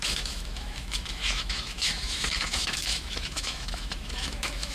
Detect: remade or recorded remade